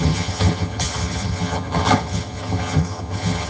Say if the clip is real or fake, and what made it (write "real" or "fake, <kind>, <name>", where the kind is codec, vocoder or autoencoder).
fake, vocoder, HiFi-GAN